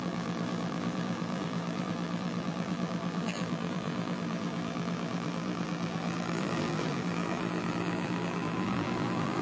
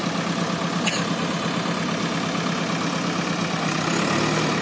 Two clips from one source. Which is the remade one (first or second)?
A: first